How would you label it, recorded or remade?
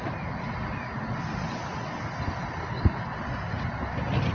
recorded